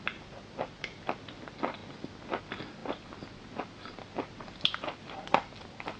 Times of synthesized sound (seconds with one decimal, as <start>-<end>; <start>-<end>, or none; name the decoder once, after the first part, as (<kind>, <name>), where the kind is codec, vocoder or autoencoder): none